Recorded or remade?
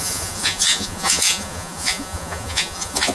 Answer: remade